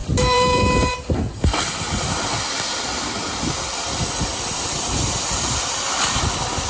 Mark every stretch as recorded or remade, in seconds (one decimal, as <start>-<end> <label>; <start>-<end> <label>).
0.0-6.7 remade